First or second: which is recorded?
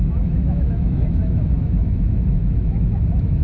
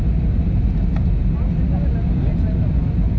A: second